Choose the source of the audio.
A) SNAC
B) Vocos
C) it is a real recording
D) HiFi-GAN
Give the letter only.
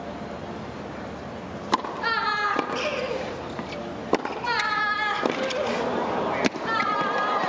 C